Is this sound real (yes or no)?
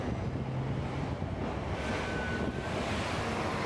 yes